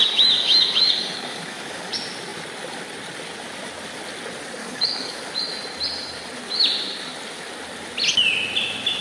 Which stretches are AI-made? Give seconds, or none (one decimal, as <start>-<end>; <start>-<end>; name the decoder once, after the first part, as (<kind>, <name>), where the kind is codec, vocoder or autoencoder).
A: 0.0-1.9 (codec, DAC); 4.6-5.3